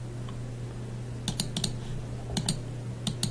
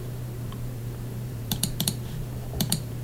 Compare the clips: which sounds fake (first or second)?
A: second